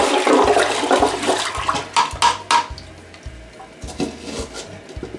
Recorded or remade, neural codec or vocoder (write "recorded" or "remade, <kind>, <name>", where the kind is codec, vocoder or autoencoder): recorded